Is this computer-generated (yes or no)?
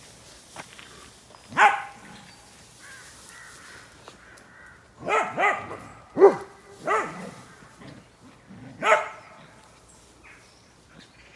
no